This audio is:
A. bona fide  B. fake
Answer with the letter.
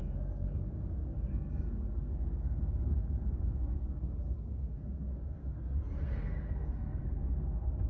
B